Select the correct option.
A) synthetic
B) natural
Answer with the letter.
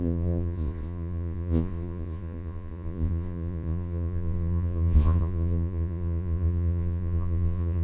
A